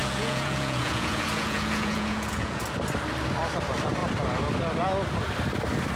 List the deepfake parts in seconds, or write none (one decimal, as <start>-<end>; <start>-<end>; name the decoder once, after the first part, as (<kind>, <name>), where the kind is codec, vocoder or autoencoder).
0.0-2.6 (vocoder, Vocos)

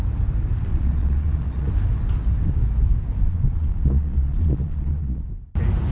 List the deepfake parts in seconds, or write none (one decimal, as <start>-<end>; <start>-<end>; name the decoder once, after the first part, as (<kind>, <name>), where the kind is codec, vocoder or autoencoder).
0.7-1.7 (vocoder, Vocos); 3.3-5.2